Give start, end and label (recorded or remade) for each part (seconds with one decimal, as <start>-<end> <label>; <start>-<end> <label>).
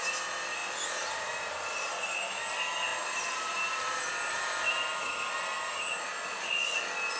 0.0-0.6 recorded; 0.6-2.3 remade; 2.3-2.9 recorded; 2.9-6.1 remade; 6.1-7.2 recorded